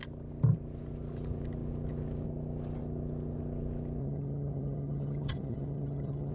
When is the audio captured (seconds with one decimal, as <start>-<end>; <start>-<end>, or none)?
0.0-4.0